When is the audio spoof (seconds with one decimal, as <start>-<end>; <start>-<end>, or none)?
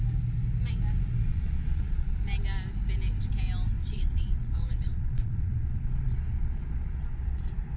1.3-2.2; 3.8-7.8